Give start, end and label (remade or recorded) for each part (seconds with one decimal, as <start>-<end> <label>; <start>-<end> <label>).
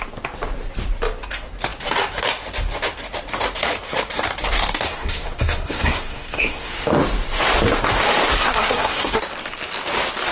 0.0-4.9 recorded; 4.9-6.7 remade; 6.7-8.4 recorded; 8.4-9.2 remade; 9.2-10.3 recorded